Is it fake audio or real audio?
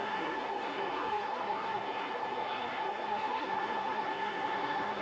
fake